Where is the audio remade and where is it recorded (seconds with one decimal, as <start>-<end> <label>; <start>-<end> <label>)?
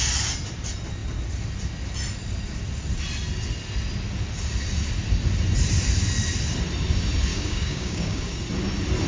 0.0-7.3 recorded; 7.3-8.4 remade; 8.4-9.1 recorded